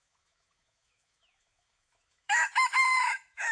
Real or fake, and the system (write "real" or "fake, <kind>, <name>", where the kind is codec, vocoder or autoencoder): fake, autoencoder, DAC-VAE